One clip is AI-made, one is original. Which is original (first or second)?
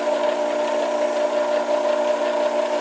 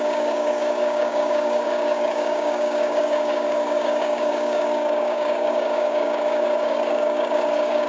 first